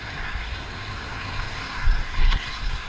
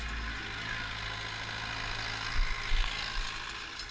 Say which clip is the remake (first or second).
first